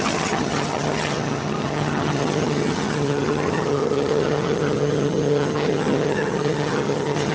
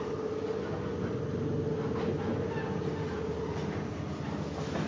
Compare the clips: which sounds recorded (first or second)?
second